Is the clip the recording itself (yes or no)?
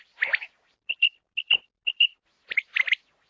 yes